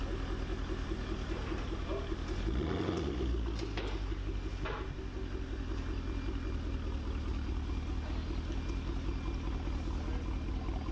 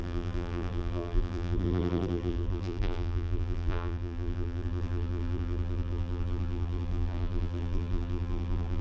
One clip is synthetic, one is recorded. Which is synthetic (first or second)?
second